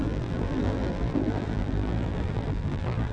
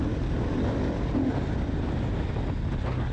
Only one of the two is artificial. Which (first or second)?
first